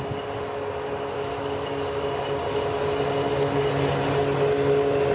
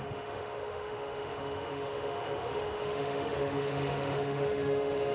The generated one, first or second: second